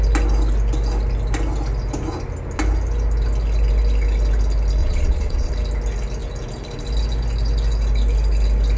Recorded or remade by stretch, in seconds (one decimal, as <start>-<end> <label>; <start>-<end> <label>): 0.0-4.8 recorded; 4.8-5.5 remade; 5.5-8.8 recorded